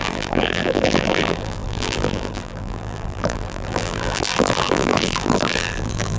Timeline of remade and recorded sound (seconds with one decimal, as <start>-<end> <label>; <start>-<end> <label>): 0.0-6.2 remade